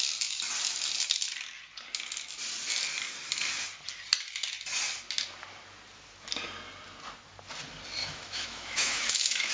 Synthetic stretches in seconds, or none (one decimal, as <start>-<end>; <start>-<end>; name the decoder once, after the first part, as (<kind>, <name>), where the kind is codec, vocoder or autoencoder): 8.0-9.5 (autoencoder, DAC-VAE)